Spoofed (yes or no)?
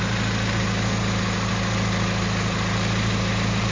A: no